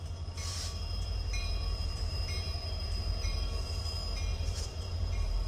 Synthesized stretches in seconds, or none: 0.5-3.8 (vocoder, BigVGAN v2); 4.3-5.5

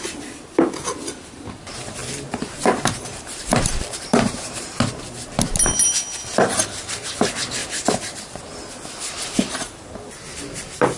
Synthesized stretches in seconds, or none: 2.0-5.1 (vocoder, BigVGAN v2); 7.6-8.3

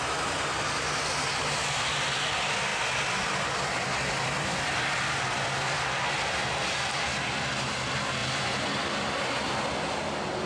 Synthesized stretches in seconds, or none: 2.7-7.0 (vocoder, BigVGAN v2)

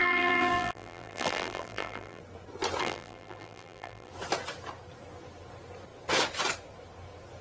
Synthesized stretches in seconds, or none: 0.0-2.2 (vocoder, BigVGAN v2); 2.8-4.1

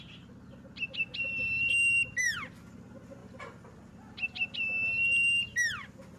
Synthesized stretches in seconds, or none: 1.1-1.7 (vocoder, BigVGAN v2); 3.2-3.9

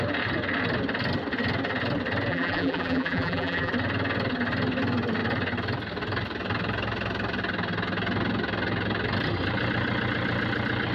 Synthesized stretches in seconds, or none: 2.3-3.7 (vocoder, BigVGAN v2)